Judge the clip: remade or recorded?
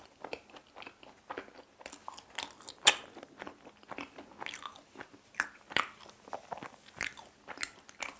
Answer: recorded